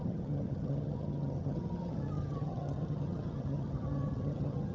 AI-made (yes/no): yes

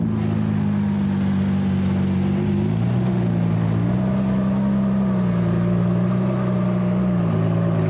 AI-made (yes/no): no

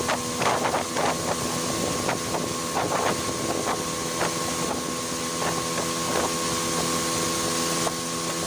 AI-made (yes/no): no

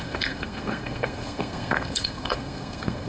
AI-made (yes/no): yes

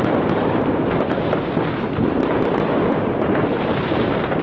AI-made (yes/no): no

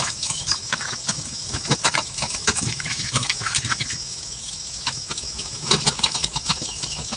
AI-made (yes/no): yes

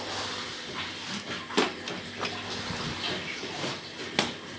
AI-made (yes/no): no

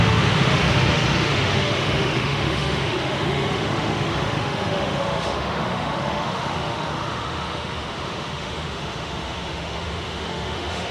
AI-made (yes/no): yes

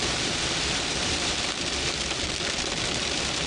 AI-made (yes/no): no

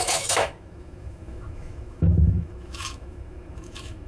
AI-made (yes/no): yes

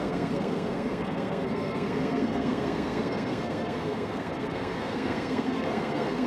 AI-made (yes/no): yes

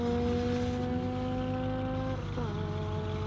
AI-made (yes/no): no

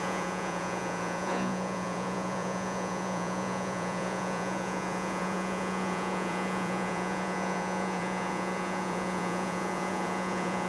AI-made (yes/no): yes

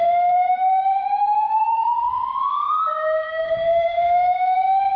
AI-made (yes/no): yes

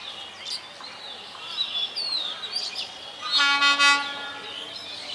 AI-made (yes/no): no